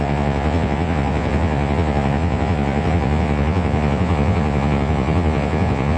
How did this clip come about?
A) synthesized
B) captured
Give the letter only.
A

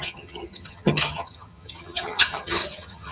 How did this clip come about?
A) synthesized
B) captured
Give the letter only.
A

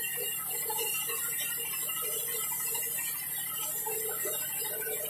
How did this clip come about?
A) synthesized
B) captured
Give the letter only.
B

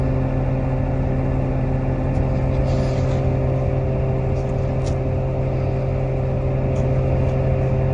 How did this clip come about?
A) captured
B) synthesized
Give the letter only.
A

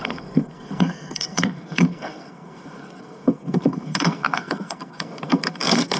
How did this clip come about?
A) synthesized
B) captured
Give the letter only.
A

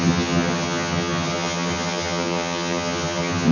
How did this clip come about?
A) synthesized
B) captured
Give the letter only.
A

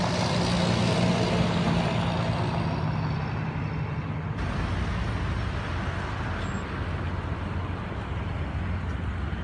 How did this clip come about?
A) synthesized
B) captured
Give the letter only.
B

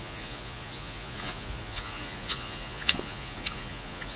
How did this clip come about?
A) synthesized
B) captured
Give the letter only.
A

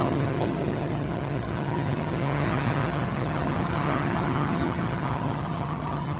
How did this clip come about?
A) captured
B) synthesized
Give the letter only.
B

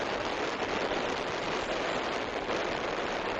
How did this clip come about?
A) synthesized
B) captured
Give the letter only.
B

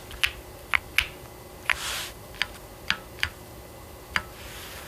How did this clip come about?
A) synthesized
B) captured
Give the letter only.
B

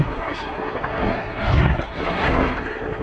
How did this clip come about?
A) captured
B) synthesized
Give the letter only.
B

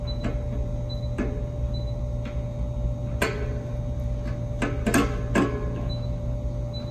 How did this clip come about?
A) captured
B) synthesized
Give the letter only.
A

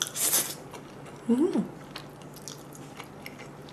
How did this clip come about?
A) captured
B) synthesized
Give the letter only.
A